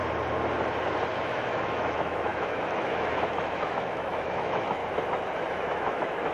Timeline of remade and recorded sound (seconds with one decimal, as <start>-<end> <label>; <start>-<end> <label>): 0.0-1.1 recorded; 1.1-4.8 remade; 4.8-5.5 recorded; 5.5-6.3 remade